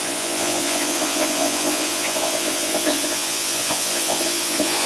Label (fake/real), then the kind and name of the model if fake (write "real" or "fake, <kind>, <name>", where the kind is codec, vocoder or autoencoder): fake, vocoder, Vocos